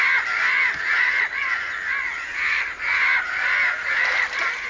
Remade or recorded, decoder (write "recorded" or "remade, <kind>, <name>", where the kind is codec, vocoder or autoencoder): recorded